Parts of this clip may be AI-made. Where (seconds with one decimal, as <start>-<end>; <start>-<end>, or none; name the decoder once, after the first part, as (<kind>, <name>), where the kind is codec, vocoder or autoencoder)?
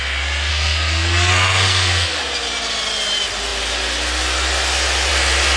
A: 0.5-2.2 (codec, SNAC)